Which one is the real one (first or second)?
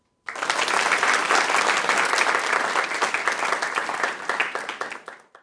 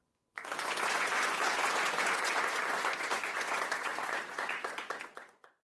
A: first